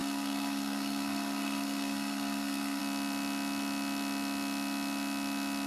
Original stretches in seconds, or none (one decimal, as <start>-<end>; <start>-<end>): 2.8-5.7